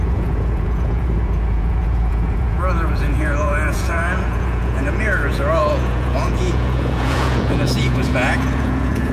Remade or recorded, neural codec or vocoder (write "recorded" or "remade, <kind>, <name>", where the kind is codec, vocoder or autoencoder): remade, vocoder, Vocos